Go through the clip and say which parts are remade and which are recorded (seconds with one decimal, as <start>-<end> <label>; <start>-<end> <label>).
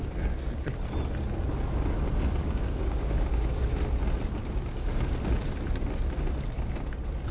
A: 0.0-2.4 recorded; 2.4-3.6 remade; 3.6-4.4 recorded; 4.4-5.1 remade; 5.1-7.3 recorded